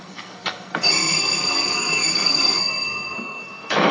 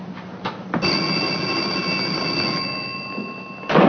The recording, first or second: second